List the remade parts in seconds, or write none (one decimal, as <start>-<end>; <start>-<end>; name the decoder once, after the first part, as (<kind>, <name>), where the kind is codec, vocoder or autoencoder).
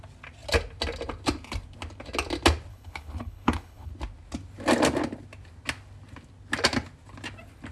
2.7-3.9 (codec, HILCodec)